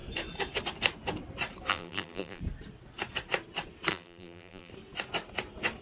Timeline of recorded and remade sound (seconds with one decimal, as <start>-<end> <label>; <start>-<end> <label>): 0.0-1.7 recorded; 1.7-2.4 remade; 2.4-3.9 recorded; 3.9-4.7 remade; 4.7-5.8 recorded